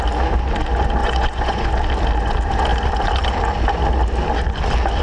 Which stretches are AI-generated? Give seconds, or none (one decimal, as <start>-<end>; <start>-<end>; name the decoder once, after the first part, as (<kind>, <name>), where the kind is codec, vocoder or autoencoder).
1.0-1.7 (vocoder, Vocos)